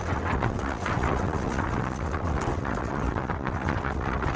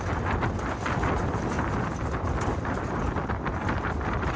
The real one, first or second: second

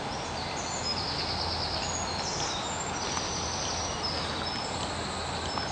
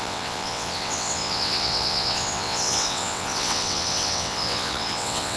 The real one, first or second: first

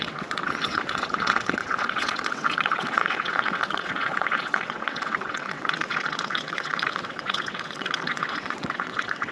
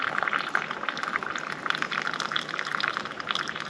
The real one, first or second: second